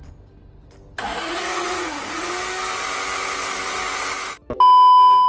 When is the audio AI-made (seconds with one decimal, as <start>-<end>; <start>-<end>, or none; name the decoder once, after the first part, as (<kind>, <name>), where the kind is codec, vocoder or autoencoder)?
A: 1.1-2.3 (vocoder, Vocos)